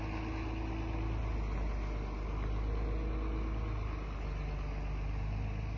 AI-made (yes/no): no